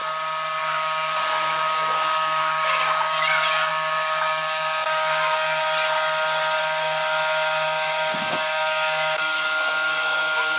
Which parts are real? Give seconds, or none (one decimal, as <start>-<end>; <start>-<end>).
0.0-0.6; 5.6-6.6